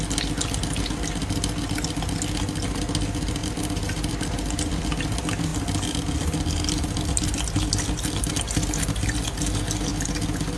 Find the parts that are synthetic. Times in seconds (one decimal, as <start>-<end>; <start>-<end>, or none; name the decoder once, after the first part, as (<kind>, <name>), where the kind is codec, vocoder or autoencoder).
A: none